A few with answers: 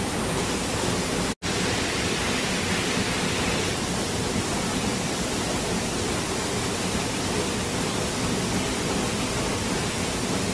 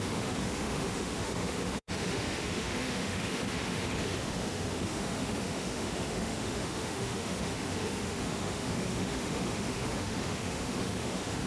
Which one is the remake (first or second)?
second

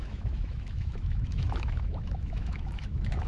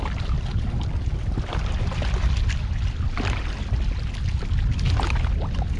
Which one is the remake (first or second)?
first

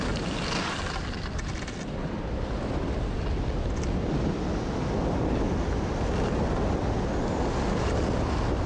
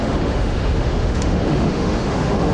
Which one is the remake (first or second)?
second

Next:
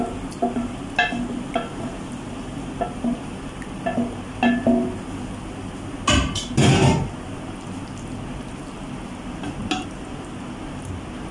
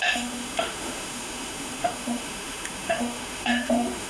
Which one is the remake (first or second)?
second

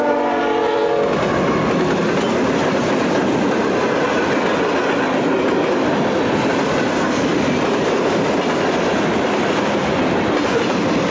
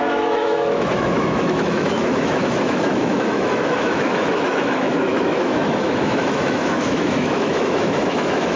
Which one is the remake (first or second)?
second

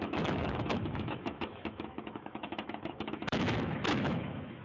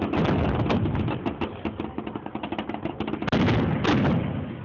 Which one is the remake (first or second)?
first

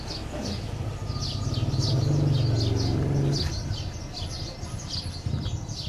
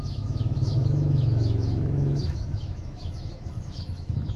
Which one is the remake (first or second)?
second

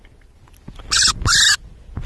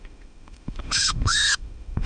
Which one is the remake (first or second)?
second